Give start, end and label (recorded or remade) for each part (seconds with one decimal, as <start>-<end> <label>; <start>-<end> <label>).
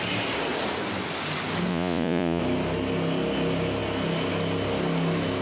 0.0-1.7 recorded; 1.7-2.4 remade; 2.4-5.4 recorded